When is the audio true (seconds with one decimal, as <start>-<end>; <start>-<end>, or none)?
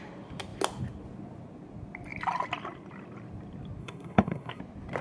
0.0-3.8; 4.6-5.0